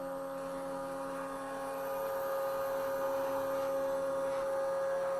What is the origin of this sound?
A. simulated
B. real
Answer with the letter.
B